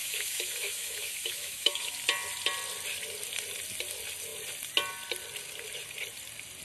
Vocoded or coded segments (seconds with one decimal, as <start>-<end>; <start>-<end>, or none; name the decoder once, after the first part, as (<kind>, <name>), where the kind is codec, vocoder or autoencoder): 0.0-1.9 (autoencoder, DAC-VAE)